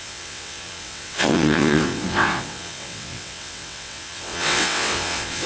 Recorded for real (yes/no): no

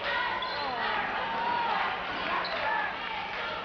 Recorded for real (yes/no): yes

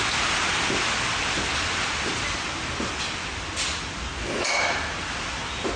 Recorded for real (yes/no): yes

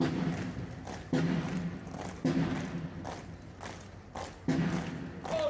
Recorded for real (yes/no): yes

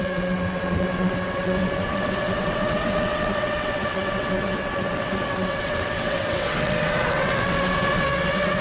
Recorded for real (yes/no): no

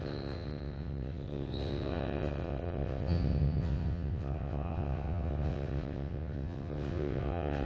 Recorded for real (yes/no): no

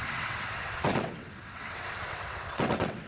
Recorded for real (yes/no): no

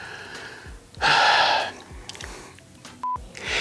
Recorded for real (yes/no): yes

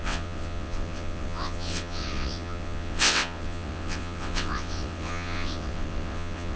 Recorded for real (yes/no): no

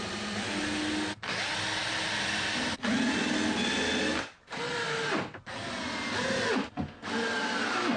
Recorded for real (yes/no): yes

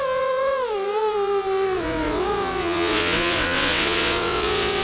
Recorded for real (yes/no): no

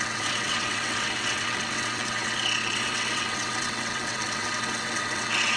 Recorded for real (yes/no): no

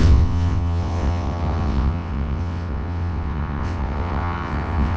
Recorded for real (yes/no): no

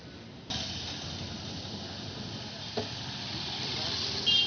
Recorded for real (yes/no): yes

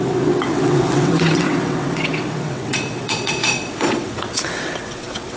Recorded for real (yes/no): no